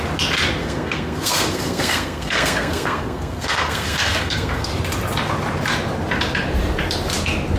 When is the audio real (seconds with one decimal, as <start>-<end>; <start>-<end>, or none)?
0.0-0.6; 4.7-7.6